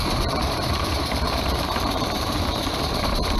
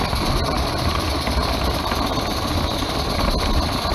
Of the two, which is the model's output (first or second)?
first